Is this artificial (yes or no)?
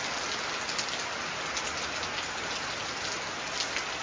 no